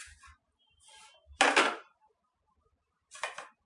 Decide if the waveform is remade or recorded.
recorded